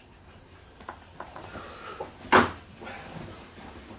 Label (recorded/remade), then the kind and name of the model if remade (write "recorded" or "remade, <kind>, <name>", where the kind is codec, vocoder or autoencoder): recorded